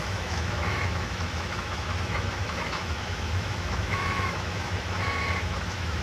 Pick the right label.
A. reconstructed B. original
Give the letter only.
A